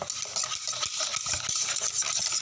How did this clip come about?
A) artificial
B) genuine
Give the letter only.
B